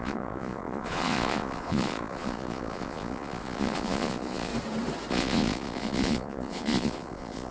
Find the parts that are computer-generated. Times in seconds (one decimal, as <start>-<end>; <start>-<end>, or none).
0.0-4.5; 5.1-7.5